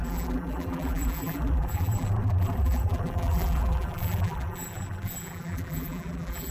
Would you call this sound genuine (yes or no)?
no